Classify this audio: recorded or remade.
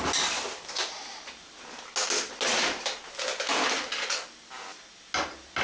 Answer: recorded